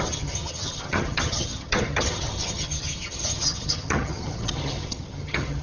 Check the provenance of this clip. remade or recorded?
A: remade